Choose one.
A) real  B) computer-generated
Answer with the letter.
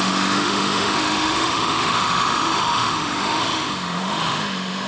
B